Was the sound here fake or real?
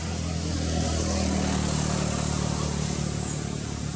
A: real